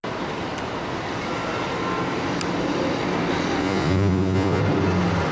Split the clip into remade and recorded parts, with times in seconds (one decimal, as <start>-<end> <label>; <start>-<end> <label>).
0.0-3.6 recorded; 3.6-4.6 remade; 4.6-5.3 recorded